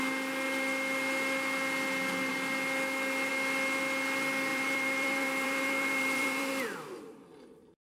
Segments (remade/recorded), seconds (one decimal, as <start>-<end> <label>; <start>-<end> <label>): 0.0-4.5 recorded; 4.5-6.5 remade; 6.5-7.9 recorded